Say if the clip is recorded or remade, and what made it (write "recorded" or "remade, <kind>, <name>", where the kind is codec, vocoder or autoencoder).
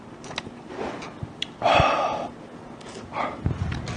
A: recorded